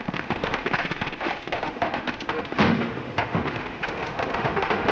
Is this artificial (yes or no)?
yes